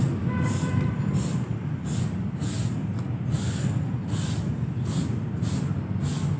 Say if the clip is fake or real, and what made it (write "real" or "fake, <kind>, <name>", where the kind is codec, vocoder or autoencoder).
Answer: real